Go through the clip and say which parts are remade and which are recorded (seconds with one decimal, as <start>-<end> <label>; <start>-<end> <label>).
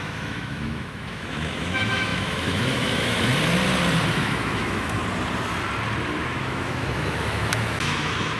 0.0-3.3 remade; 3.3-4.1 recorded; 4.1-5.0 remade; 5.0-6.2 recorded; 6.2-8.4 remade